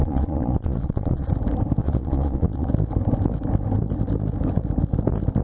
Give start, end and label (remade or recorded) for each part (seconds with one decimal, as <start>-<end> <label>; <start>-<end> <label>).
0.0-1.3 remade; 1.3-1.8 recorded; 1.8-2.7 remade; 2.7-5.4 recorded